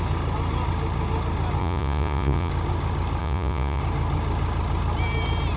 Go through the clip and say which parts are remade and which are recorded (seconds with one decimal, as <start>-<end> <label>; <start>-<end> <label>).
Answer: 0.0-1.6 recorded; 1.6-2.5 remade; 2.5-3.2 recorded; 3.2-3.8 remade; 3.8-5.6 recorded